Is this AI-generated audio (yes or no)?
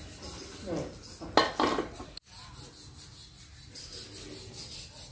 no